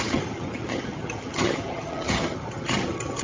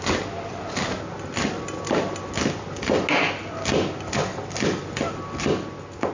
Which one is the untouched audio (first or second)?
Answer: second